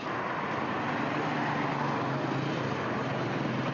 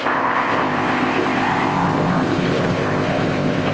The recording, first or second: first